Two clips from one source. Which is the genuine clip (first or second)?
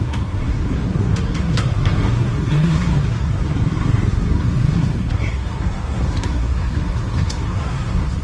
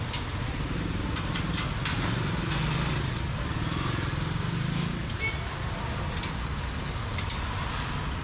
second